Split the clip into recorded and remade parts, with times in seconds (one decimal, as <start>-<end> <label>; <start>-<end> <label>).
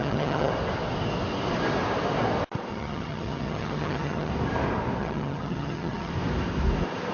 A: 0.0-0.5 remade; 0.5-2.7 recorded; 2.7-4.3 remade; 4.3-5.0 recorded; 5.0-6.1 remade; 6.1-7.1 recorded